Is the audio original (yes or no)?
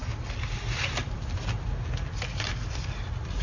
yes